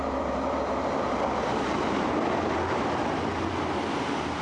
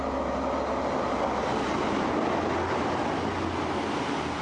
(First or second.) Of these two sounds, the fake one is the first